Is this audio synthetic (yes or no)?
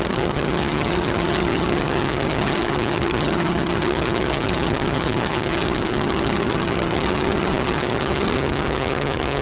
yes